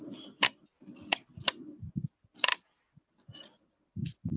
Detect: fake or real real